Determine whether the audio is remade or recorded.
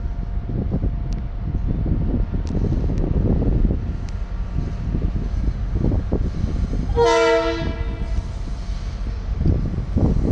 recorded